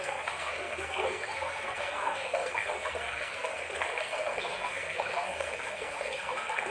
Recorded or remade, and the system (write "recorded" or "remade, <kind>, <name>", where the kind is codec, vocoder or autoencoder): remade, codec, SNAC